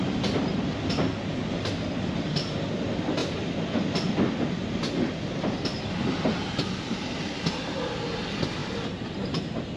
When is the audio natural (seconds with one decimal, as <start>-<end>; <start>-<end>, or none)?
0.0-8.6; 9.4-9.8

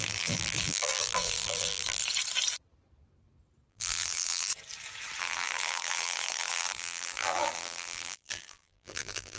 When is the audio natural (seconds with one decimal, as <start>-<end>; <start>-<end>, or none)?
2.0-3.7; 4.5-5.2

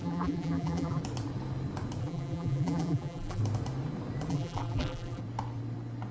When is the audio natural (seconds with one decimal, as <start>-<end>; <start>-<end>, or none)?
1.0-2.0; 3.4-4.3; 5.2-6.1

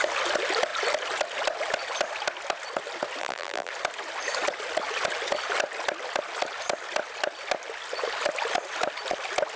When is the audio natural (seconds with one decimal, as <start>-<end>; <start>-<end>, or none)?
0.0-3.2; 3.7-9.6

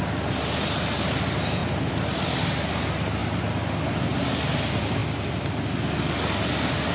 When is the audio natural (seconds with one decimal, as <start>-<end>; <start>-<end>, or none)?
0.0-1.6; 2.8-5.0; 5.5-6.9

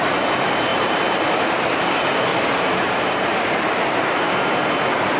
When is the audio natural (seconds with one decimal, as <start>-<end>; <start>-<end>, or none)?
0.0-0.7; 1.9-2.3; 3.7-5.2

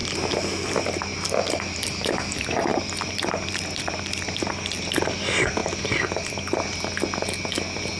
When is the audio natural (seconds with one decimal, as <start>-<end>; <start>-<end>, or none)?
4.5-8.0